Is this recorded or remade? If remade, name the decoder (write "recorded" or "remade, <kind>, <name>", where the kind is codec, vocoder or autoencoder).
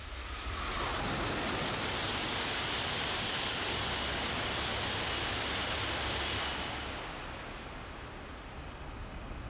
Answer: recorded